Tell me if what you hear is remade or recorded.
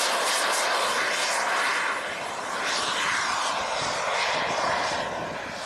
recorded